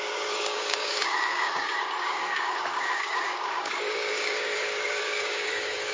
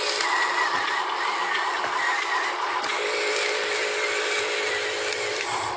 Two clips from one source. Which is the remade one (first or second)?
first